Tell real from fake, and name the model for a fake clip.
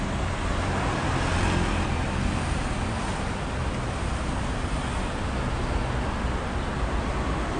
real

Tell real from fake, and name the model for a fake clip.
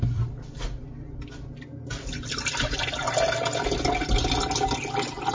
real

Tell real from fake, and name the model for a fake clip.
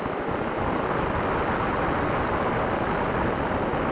real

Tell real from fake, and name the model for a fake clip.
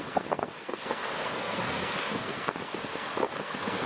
fake, codec, SNAC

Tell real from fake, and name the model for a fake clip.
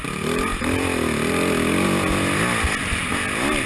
real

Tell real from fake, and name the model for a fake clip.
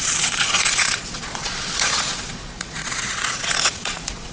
fake, vocoder, Vocos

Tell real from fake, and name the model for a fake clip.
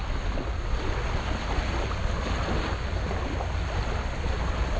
real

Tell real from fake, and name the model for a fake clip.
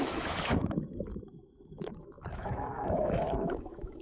fake, autoencoder, DAC-VAE